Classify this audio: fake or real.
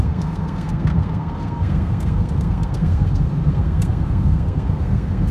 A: fake